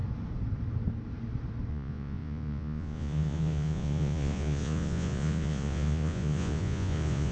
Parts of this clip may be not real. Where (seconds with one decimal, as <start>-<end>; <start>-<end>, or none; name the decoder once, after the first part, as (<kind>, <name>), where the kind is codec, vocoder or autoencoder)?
1.7-7.3 (vocoder, Vocos)